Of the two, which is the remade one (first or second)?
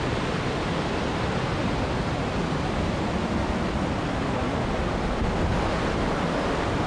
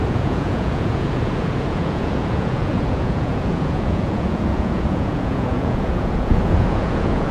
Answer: second